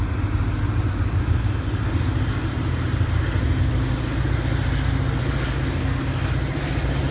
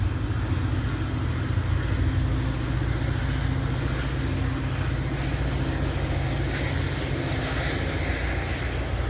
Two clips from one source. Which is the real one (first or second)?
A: second